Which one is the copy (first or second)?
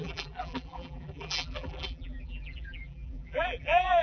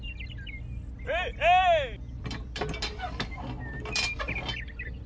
first